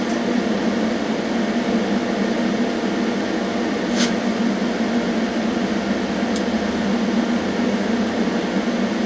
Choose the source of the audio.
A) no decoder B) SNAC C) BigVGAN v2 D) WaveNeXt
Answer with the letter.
A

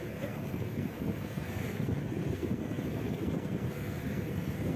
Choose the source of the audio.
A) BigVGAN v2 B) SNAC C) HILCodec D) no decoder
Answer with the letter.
B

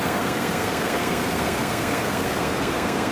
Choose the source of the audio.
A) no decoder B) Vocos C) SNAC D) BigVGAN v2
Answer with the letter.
C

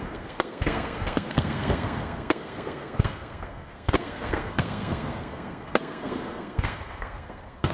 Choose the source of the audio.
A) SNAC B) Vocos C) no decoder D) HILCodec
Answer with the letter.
A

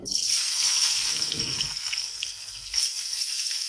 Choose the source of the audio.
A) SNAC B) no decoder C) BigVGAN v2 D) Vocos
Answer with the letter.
A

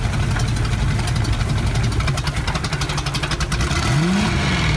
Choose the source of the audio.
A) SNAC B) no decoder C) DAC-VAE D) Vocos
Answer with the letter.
B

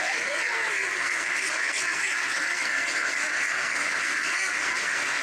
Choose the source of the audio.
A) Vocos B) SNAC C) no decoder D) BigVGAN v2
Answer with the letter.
B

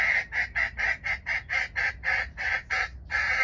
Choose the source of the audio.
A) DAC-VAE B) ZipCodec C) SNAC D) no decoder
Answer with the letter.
D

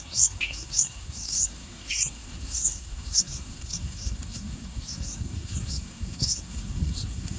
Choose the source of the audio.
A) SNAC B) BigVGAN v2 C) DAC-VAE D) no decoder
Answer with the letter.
A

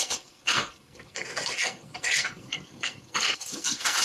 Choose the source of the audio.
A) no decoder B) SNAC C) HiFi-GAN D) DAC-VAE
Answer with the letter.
B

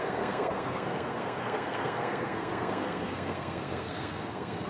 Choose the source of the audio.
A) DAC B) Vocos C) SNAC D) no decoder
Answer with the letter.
C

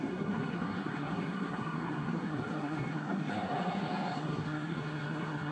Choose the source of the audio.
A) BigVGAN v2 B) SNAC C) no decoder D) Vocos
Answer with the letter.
B